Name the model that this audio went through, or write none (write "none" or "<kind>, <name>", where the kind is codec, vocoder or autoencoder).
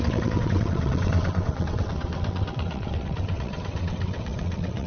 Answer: vocoder, WaveNeXt